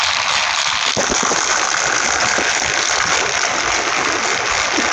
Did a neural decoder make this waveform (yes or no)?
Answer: no